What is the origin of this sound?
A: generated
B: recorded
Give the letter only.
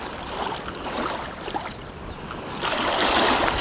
B